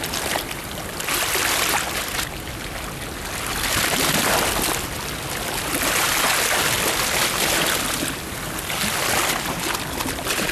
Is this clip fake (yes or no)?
no